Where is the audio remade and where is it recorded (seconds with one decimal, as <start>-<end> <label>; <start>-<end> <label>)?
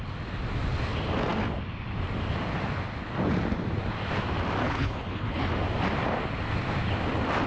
0.0-4.6 recorded; 4.6-5.5 remade; 5.5-7.5 recorded